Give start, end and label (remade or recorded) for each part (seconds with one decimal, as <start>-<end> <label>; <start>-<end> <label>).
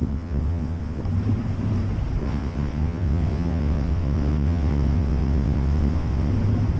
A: 0.0-1.0 remade; 1.0-2.2 recorded; 2.2-6.3 remade; 6.3-6.8 recorded